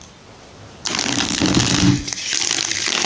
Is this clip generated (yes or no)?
no